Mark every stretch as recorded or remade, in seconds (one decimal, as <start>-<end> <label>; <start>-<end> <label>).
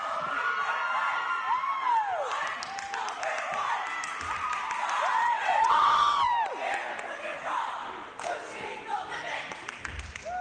0.0-5.1 recorded; 5.1-6.2 remade; 6.2-10.4 recorded